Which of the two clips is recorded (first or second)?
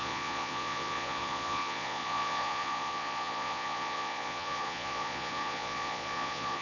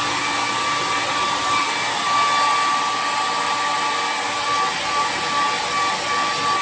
second